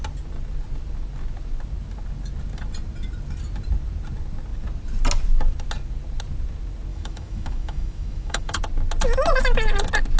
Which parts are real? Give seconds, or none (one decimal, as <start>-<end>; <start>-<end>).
0.0-6.9; 8.6-10.2